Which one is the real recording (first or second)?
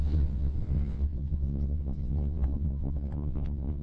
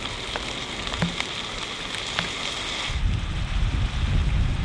second